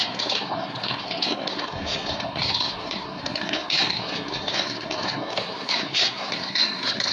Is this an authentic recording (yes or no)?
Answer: no